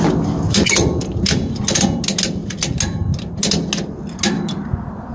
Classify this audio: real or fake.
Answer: real